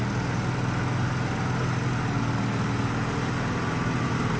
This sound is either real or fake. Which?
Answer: real